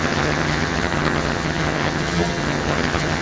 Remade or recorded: remade